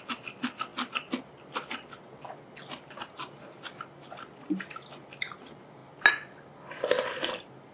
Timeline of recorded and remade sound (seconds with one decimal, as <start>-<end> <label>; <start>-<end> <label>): 0.0-7.7 recorded

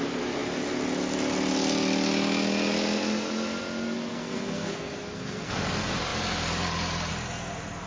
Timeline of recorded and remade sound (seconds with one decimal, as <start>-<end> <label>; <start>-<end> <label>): 0.0-4.1 recorded; 4.1-5.5 remade; 5.5-7.9 recorded

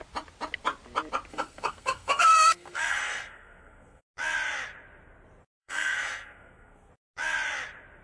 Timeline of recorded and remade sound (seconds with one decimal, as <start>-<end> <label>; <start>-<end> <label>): 0.0-1.3 recorded; 1.3-4.0 remade; 4.0-5.6 recorded; 5.6-6.9 remade; 6.9-8.0 recorded

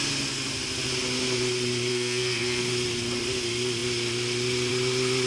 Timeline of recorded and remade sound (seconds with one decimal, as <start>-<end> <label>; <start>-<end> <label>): 0.0-1.9 recorded; 1.9-2.6 remade; 2.6-5.3 recorded

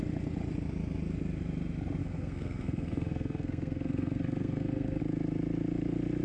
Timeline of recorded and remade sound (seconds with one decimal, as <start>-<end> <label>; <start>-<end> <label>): 0.0-2.0 recorded; 2.0-5.0 remade; 5.0-6.2 recorded

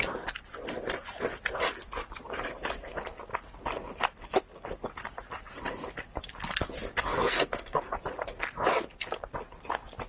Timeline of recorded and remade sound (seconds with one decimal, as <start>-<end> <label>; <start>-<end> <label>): 0.0-7.1 recorded; 7.1-7.9 remade; 7.9-10.1 recorded